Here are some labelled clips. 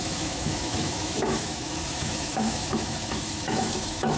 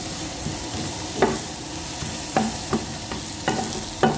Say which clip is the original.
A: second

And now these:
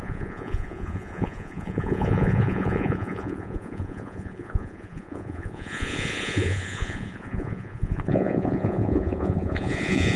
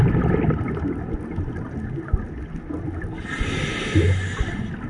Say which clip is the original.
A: second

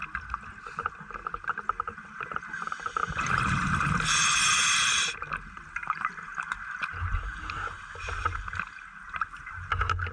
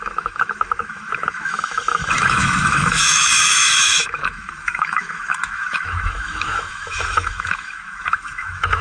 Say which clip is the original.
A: first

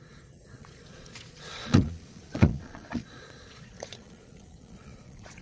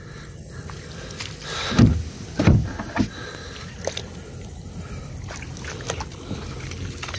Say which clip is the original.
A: second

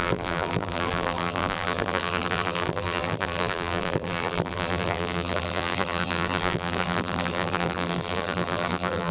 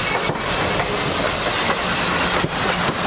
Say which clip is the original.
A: second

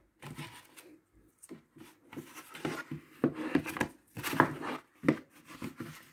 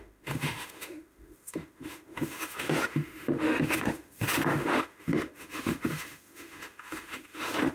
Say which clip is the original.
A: first